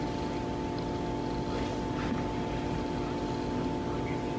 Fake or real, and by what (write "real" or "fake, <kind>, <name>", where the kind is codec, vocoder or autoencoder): real